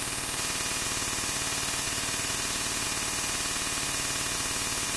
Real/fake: real